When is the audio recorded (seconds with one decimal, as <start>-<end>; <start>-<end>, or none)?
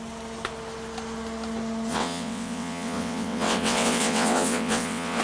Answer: 0.0-1.9